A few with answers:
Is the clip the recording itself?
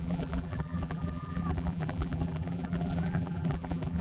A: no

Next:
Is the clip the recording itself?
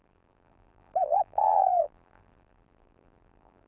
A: no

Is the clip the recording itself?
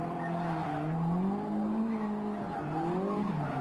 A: yes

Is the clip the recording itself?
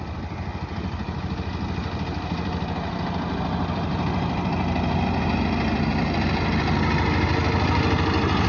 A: yes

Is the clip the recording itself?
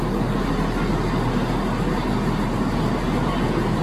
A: yes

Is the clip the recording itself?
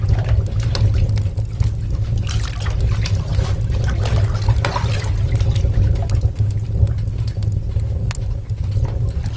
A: yes